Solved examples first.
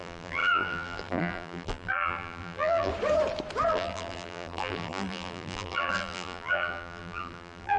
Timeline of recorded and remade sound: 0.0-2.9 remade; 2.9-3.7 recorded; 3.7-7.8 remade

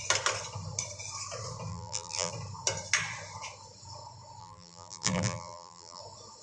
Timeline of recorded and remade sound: 0.0-1.7 recorded; 1.7-2.3 remade; 2.3-4.4 recorded; 4.4-6.0 remade; 6.0-6.4 recorded

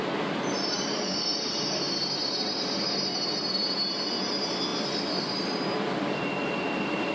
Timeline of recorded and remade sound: 0.0-4.7 recorded; 4.7-6.2 remade; 6.2-7.1 recorded

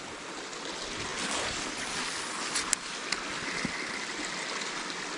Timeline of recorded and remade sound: 0.0-5.2 recorded

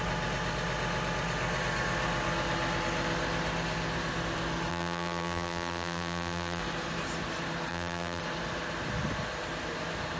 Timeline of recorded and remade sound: 0.0-4.7 recorded; 4.7-6.6 remade; 6.6-7.7 recorded; 7.7-8.2 remade; 8.2-10.2 recorded

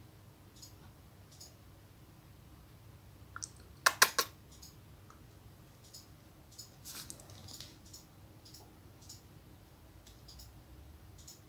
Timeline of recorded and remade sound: 0.0-11.5 recorded

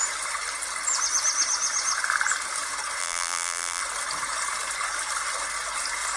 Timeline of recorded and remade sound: 0.0-3.0 recorded; 3.0-3.8 remade; 3.8-6.2 recorded

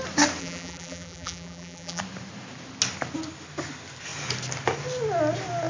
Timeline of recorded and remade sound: 0.0-0.4 recorded; 0.4-2.0 remade; 2.0-5.7 recorded